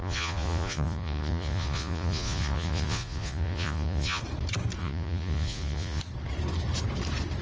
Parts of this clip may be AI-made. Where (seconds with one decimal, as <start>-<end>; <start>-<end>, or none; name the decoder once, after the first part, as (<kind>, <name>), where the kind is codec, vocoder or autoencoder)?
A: 0.0-4.2 (vocoder, Vocos); 4.8-6.0